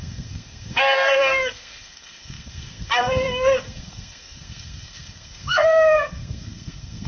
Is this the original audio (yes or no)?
no